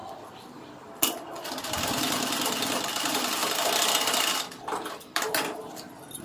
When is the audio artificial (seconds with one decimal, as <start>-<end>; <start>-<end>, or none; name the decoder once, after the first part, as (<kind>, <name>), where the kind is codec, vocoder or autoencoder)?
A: 0.0-3.4 (vocoder, BigVGAN v2); 4.6-6.2